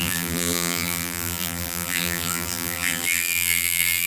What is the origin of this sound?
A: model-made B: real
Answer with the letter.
A